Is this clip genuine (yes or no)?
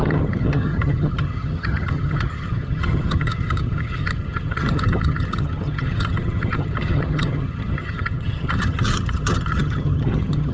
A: no